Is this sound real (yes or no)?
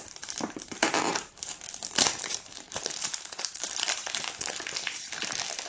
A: no